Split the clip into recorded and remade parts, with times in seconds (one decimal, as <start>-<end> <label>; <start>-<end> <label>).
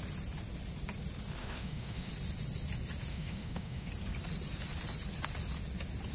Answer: 0.0-1.4 recorded; 1.4-2.1 remade; 2.1-3.1 recorded; 3.1-3.9 remade; 3.9-6.1 recorded